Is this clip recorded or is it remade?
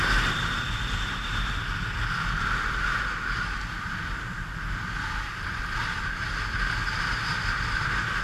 recorded